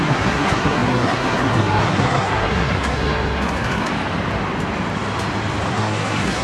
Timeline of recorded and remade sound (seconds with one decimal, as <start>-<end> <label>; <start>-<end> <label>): 0.0-3.9 remade; 3.9-5.7 recorded; 5.7-6.4 remade